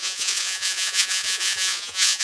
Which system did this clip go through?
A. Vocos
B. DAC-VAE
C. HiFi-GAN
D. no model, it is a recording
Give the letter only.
A